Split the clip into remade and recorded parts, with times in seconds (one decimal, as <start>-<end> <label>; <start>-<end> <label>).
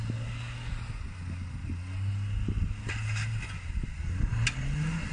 0.0-5.1 recorded